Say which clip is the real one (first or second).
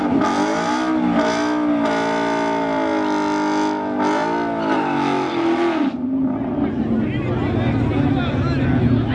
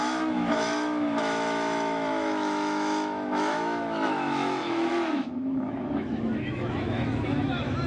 first